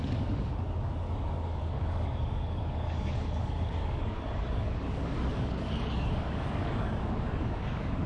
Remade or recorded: remade